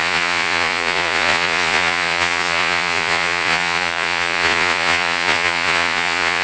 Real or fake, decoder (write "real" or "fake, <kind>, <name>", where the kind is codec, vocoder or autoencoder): fake, vocoder, Vocos